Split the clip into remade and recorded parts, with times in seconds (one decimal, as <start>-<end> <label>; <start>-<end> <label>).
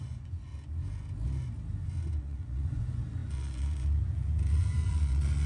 0.0-0.5 remade; 0.5-2.2 recorded; 2.2-5.5 remade